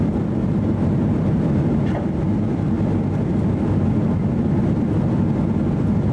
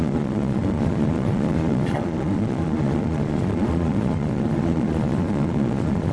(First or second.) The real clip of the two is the first